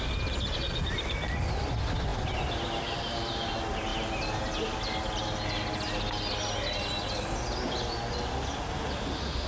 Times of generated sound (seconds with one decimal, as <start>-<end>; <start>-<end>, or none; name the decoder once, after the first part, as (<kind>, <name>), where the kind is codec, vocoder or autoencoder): 2.1-3.3 (vocoder, BigVGAN v2)